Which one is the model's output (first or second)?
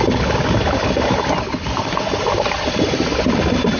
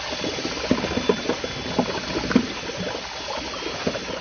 first